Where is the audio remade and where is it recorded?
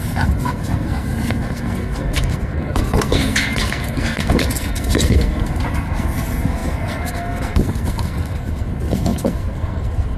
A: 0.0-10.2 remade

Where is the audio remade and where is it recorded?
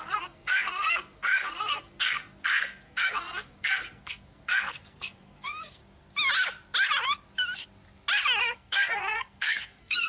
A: 0.0-5.8 remade; 5.8-8.4 recorded; 8.4-10.1 remade